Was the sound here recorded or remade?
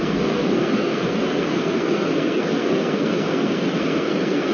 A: remade